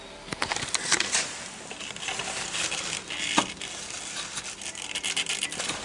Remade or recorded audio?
recorded